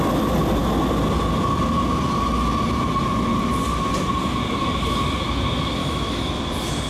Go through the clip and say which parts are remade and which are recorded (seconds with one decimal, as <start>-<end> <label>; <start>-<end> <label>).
0.0-5.8 recorded; 5.8-6.4 remade; 6.4-6.9 recorded